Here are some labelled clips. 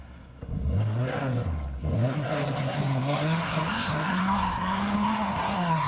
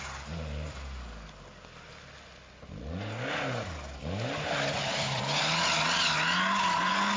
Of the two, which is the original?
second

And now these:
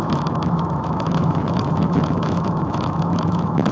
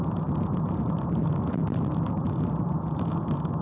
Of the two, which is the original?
second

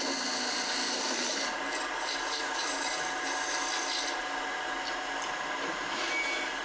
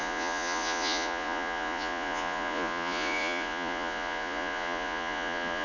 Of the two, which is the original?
first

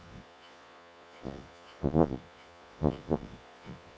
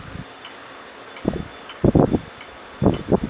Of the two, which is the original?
second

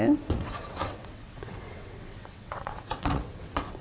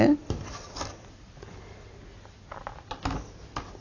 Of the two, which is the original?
second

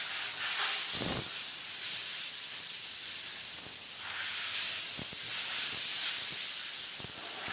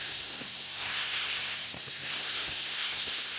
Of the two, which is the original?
first